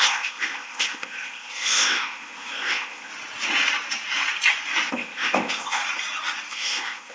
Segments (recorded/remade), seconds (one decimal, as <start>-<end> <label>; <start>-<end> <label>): 0.0-3.1 remade; 3.1-4.9 recorded; 4.9-5.8 remade; 5.8-6.5 recorded; 6.5-7.1 remade